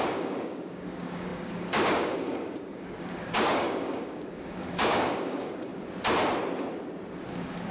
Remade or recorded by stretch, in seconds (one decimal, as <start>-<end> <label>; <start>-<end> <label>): 0.0-5.7 remade; 5.7-7.3 recorded; 7.3-7.7 remade